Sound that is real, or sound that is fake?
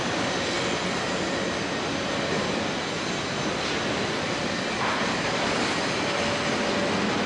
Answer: real